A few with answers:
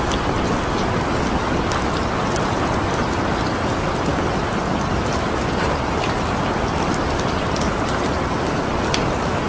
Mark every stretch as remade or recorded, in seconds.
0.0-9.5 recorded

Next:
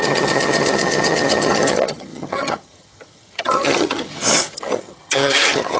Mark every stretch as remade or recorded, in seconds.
0.0-5.8 remade